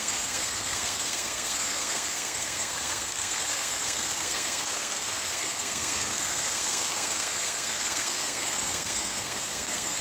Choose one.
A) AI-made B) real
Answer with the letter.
A